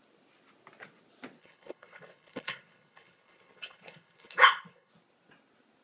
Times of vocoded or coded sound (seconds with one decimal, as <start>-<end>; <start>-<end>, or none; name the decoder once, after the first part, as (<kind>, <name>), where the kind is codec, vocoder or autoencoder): 1.4-4.9 (codec, HILCodec)